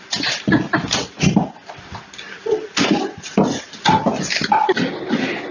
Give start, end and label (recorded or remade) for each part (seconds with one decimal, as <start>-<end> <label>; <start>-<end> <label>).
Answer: 0.0-1.6 recorded; 1.6-4.9 remade; 4.9-5.5 recorded

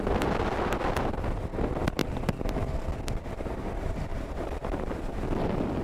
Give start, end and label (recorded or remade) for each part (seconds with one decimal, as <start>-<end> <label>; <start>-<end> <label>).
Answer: 0.0-2.0 recorded; 2.0-2.6 remade; 2.6-4.1 recorded; 4.1-5.2 remade; 5.2-5.8 recorded